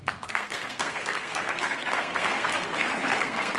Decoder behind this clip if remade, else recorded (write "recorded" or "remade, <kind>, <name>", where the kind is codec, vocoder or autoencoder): remade, codec, SNAC